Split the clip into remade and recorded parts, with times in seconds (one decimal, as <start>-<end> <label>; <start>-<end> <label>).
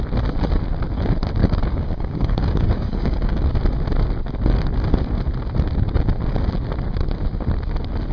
0.0-1.4 recorded; 1.4-3.5 remade; 3.5-8.1 recorded